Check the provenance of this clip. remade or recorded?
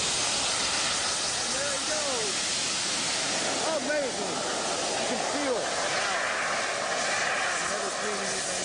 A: recorded